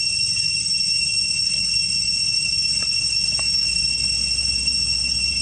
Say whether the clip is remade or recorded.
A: recorded